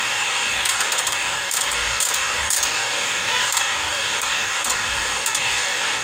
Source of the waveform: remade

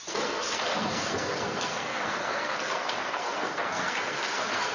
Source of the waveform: remade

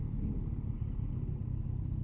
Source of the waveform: recorded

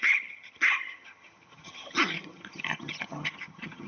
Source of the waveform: remade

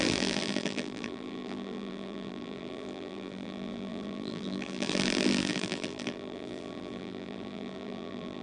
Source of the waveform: remade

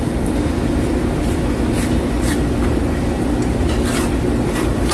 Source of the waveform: remade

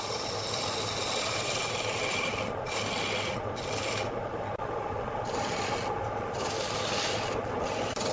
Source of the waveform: recorded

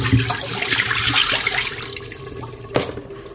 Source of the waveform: recorded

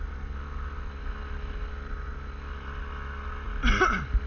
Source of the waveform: recorded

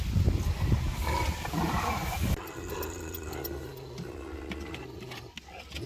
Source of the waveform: recorded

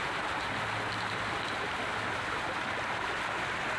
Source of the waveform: recorded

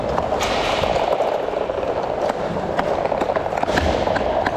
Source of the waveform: recorded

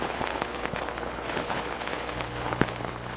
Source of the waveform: remade